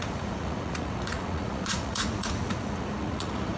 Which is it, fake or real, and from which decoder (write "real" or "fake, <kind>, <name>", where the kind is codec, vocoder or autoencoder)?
fake, vocoder, Vocos